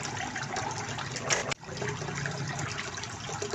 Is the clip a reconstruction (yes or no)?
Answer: no